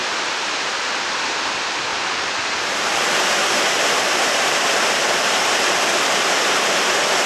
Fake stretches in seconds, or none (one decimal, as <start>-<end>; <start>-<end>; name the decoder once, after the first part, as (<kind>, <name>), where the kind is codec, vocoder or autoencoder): 0.0-0.7 (vocoder, BigVGAN v2); 1.9-6.3